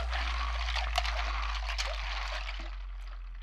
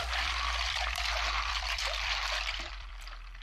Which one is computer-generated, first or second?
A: second